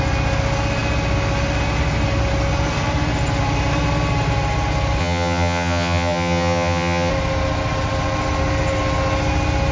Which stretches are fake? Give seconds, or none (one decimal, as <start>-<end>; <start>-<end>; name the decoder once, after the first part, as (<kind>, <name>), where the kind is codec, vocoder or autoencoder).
5.0-7.1 (vocoder, HiFi-GAN)